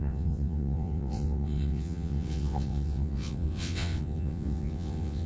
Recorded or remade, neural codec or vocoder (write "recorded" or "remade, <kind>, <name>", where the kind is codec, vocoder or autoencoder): remade, vocoder, WaveNeXt